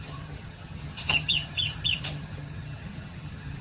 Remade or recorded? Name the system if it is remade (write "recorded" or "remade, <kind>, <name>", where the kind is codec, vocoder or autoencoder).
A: remade, vocoder, HiFi-GAN